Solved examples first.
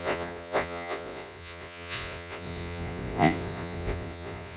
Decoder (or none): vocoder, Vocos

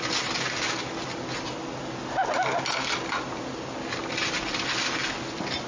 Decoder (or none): none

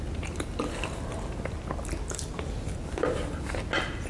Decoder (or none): none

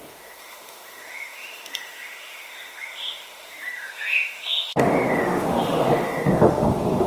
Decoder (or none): autoencoder, DAC-VAE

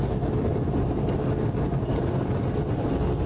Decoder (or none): none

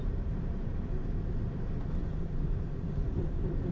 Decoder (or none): vocoder, BigVGAN v2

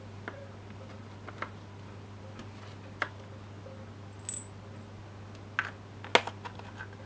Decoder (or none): none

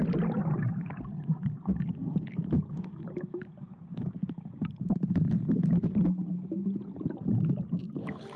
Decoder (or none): none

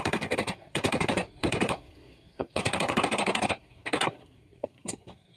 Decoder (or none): codec, SNAC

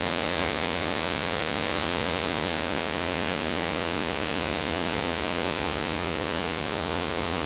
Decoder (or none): vocoder, Vocos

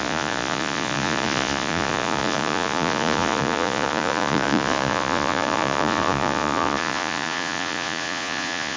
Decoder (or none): vocoder, Vocos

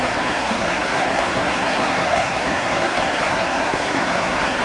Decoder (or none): codec, SNAC